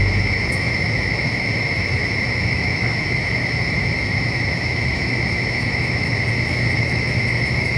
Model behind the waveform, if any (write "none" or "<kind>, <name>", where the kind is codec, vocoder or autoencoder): autoencoder, DAC-VAE